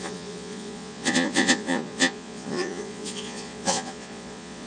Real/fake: fake